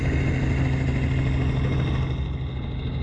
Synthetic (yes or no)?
no